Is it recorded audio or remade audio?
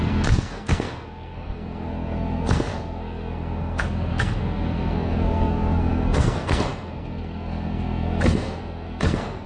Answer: remade